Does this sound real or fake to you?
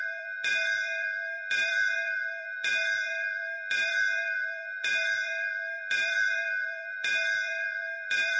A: fake